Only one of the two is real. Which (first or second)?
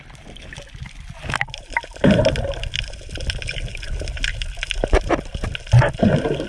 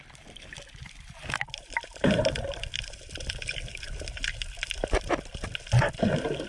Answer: first